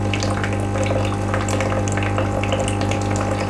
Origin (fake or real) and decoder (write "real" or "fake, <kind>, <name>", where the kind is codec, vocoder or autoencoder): real